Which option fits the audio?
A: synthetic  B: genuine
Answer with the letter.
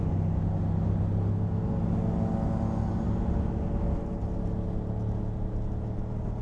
B